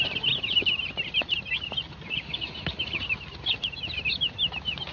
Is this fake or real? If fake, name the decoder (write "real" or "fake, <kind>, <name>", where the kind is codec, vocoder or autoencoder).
real